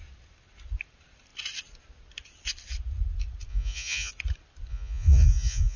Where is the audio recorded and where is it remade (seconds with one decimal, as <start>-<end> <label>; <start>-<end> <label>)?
0.0-3.5 recorded; 3.5-4.1 remade; 4.1-4.7 recorded; 4.7-5.8 remade